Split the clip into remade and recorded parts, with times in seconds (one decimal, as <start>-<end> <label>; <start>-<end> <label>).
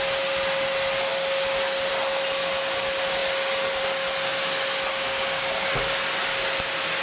0.0-4.9 recorded; 4.9-5.5 remade; 5.5-7.0 recorded